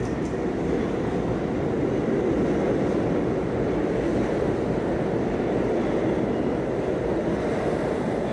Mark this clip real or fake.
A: real